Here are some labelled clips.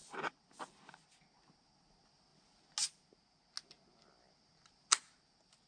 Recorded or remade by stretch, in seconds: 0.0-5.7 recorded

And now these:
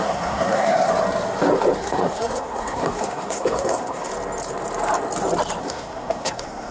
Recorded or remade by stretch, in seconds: 0.0-0.9 remade; 0.9-1.8 recorded; 1.8-4.1 remade; 4.1-5.6 recorded; 5.6-6.7 remade